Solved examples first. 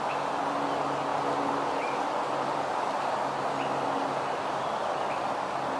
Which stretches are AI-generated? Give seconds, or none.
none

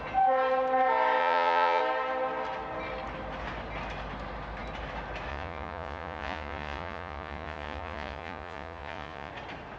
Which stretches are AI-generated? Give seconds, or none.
1.2-1.8 (vocoder, Vocos); 5.3-9.3

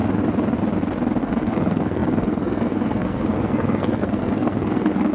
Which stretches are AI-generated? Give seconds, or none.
1.2-5.1 (codec, SNAC)